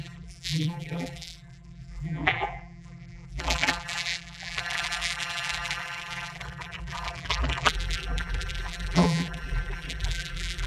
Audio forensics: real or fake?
fake